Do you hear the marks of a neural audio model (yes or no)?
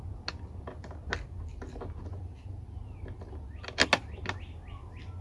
no